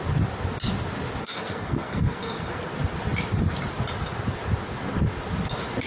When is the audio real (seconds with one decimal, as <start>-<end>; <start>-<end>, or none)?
0.0-1.2; 2.7-5.9